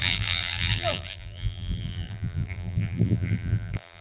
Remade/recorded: remade